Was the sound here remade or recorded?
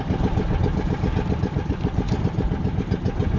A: recorded